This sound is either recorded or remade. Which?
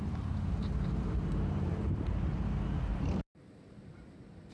remade